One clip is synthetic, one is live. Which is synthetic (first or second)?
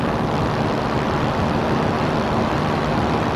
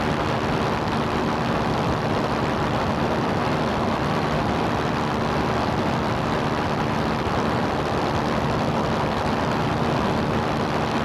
second